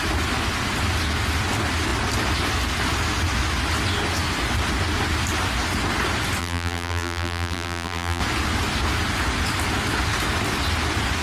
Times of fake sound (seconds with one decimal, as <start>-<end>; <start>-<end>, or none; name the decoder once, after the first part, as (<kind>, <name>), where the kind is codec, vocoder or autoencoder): 6.4-8.2 (vocoder, BigVGAN v2)